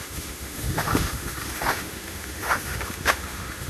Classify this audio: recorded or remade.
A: remade